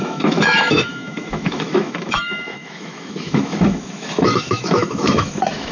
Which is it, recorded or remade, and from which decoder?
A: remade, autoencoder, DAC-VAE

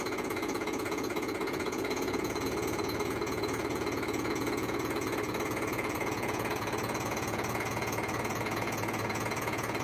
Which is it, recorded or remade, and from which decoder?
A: remade, vocoder, Vocos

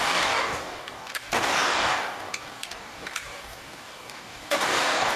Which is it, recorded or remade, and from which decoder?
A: remade, codec, DAC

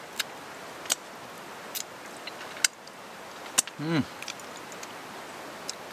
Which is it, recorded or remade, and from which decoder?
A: recorded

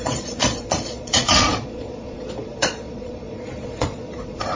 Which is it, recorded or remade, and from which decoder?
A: remade, vocoder, Vocos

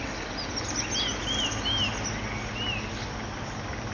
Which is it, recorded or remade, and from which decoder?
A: recorded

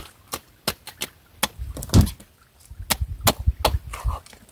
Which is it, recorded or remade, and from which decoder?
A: recorded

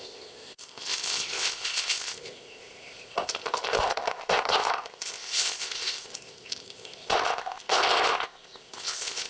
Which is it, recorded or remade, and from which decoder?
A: remade, codec, ZipCodec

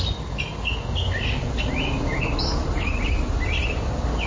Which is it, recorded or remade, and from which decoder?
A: recorded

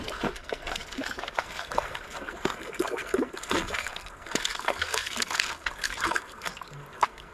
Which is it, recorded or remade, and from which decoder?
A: remade, codec, SNAC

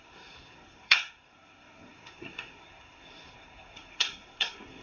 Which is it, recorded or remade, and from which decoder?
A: remade, codec, SNAC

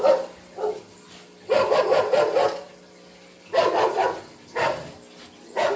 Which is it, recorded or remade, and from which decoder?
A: recorded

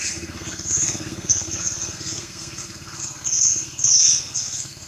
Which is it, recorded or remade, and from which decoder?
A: remade, codec, SNAC